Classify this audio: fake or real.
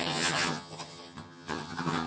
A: fake